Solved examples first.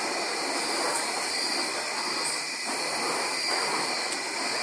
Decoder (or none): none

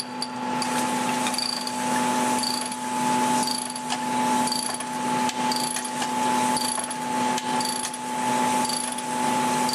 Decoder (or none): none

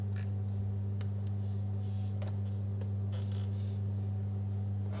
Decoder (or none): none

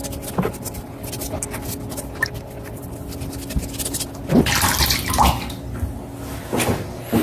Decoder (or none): none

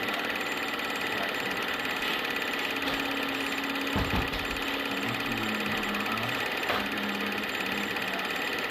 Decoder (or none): none